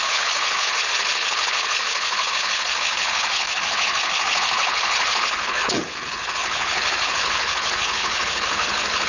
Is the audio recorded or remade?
remade